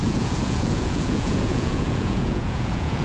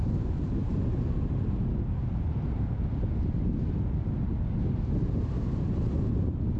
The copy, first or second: first